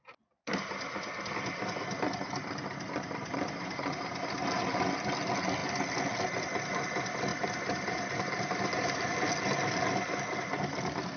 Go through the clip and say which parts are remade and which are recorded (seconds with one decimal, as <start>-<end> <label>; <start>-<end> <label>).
0.0-3.2 recorded; 3.2-4.8 remade; 4.8-7.3 recorded; 7.3-9.3 remade; 9.3-11.2 recorded